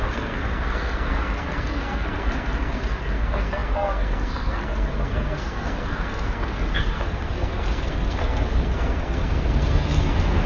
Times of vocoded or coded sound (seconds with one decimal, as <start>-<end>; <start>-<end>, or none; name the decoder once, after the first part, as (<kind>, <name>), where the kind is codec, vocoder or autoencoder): 0.0-10.5 (codec, SNAC)